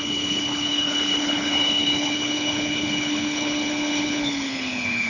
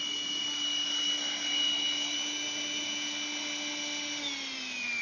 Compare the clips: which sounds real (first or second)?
second